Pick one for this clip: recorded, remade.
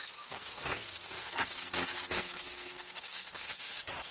remade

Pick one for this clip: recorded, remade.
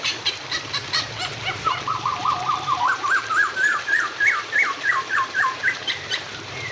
remade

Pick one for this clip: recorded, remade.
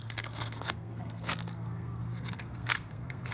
remade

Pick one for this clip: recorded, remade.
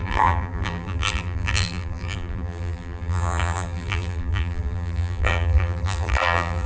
remade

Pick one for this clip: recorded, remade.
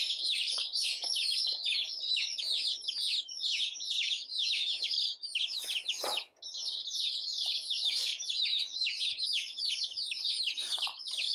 remade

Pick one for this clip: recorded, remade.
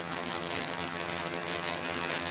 remade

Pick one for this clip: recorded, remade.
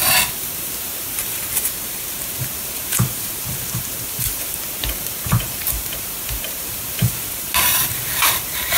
remade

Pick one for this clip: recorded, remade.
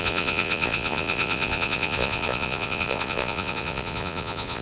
remade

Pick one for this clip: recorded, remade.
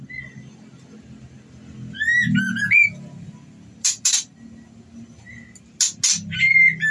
recorded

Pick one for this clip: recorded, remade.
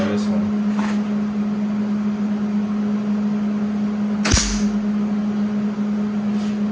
recorded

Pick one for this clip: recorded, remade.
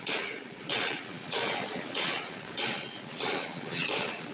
remade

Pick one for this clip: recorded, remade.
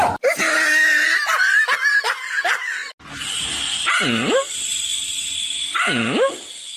recorded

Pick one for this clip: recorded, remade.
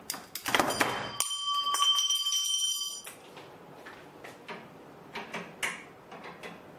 recorded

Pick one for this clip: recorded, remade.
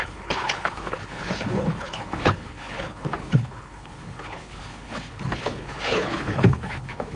remade